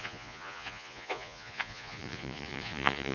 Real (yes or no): no